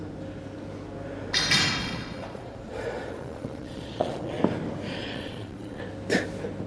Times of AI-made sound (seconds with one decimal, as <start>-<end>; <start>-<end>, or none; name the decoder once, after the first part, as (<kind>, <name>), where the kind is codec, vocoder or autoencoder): 1.8-4.4 (vocoder, Vocos); 5.0-5.8